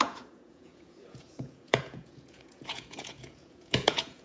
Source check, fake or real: fake